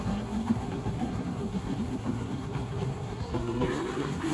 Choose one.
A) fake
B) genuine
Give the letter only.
A